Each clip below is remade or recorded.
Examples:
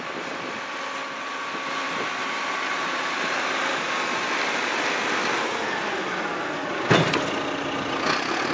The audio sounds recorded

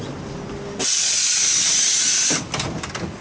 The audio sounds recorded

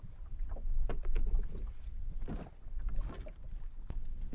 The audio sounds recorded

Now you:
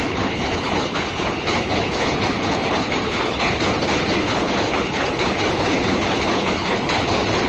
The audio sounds remade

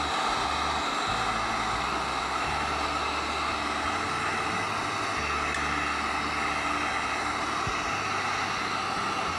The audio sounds recorded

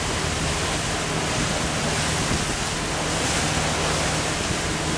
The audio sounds recorded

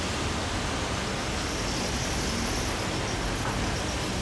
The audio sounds recorded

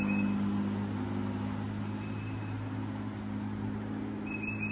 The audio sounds recorded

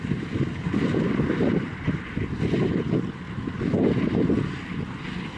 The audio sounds recorded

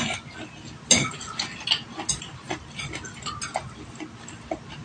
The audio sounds recorded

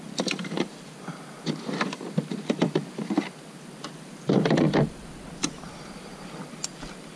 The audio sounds recorded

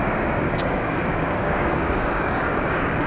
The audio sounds remade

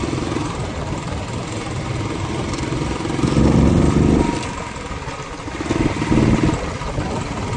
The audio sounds recorded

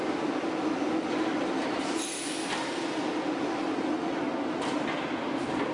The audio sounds recorded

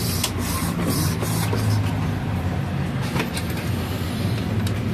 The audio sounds recorded